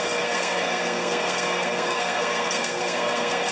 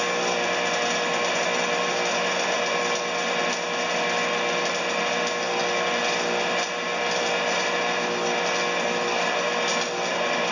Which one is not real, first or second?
first